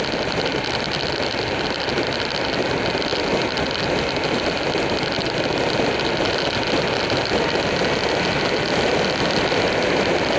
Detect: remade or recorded recorded